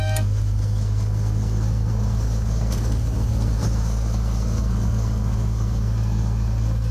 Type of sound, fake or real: fake